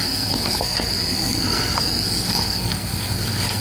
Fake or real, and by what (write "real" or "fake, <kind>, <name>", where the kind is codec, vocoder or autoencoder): fake, codec, SNAC